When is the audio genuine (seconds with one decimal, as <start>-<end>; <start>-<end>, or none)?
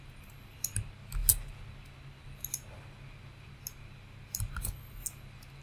0.0-5.6